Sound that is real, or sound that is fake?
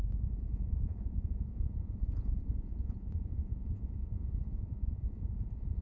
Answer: fake